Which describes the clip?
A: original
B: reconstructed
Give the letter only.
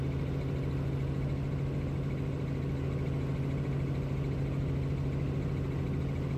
A